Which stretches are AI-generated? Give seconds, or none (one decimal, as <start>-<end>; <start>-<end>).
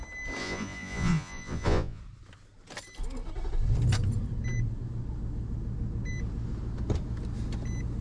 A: 0.4-2.0